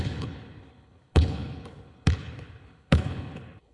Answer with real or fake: fake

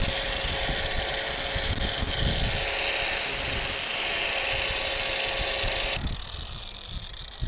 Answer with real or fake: real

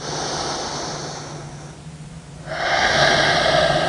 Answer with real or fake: real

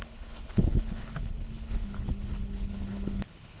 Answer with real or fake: fake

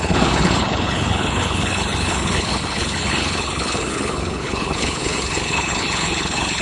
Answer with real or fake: fake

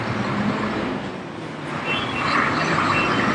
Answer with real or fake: real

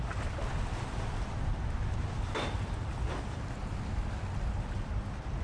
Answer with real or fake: real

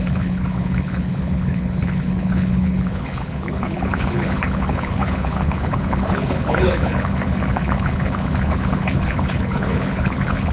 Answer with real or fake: fake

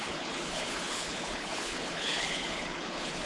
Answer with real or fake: fake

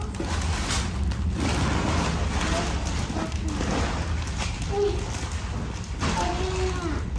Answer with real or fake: real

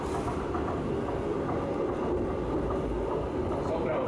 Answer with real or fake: real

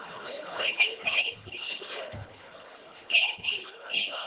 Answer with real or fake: fake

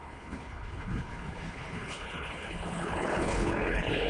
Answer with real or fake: fake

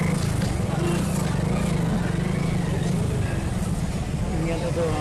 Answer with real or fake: real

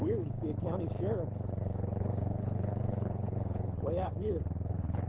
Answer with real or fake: fake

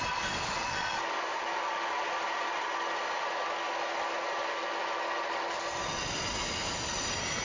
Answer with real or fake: real